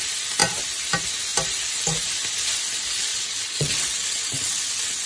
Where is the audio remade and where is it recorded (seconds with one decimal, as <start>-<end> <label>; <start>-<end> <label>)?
0.0-3.1 recorded; 3.1-5.1 remade